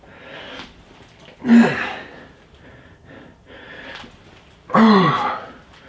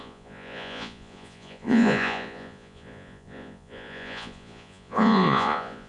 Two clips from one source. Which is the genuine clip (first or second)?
first